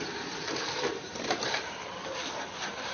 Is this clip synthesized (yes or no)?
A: yes